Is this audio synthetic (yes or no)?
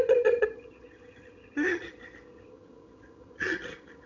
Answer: yes